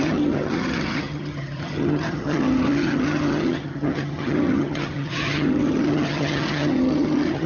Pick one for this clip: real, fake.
fake